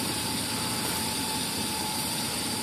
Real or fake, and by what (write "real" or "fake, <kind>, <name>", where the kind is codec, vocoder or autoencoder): real